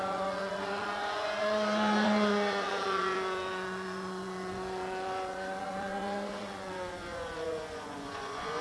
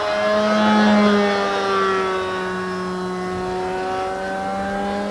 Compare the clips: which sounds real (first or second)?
second